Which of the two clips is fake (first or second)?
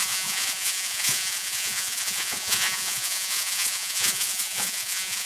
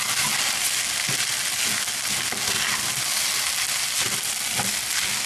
first